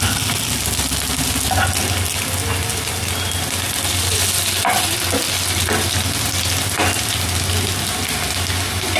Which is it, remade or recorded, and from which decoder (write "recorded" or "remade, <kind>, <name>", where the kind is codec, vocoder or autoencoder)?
recorded